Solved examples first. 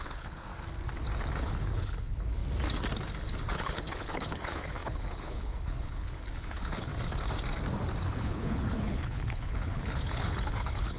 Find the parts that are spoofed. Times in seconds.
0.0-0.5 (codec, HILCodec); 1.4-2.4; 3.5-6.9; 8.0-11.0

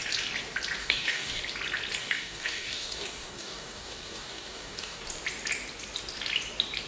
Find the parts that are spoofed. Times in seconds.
0.8-1.4 (codec, DAC); 2.0-5.0

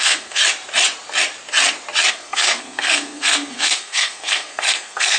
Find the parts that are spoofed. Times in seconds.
0.0-0.4 (codec, SNAC); 2.1-5.2